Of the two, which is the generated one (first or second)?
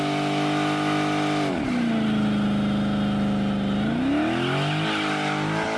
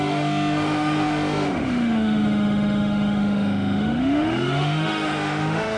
second